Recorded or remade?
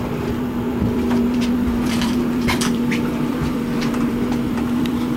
remade